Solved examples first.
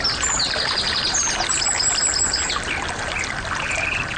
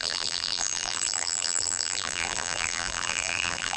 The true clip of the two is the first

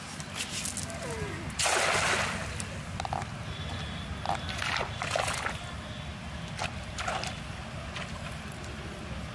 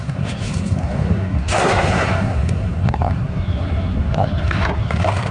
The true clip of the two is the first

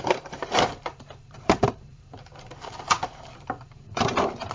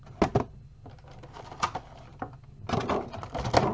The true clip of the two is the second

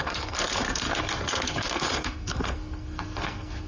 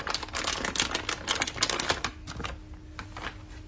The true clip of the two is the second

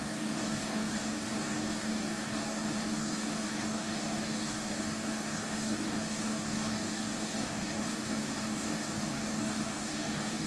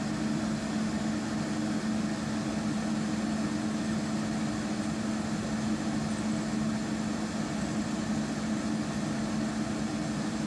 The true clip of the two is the second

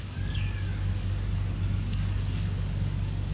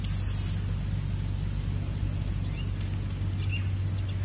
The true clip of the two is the second